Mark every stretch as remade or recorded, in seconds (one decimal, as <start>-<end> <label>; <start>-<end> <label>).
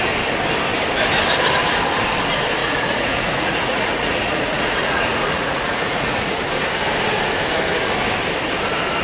0.0-2.6 recorded; 2.6-6.4 remade; 6.4-9.0 recorded